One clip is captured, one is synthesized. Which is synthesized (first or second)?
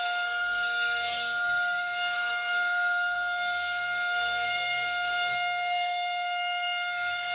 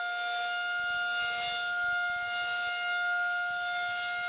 first